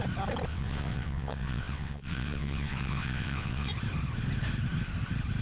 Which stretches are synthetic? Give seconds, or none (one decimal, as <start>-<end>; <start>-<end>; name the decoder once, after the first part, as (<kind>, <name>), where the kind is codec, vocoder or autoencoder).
0.5-3.7 (vocoder, WaveNeXt)